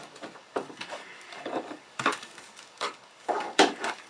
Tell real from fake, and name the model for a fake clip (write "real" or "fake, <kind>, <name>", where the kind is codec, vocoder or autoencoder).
fake, codec, DAC